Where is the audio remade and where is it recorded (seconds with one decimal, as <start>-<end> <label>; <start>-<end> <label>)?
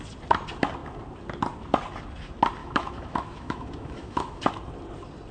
0.0-2.6 recorded; 2.6-4.4 remade; 4.4-5.3 recorded